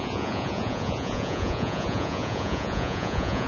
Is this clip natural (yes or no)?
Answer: no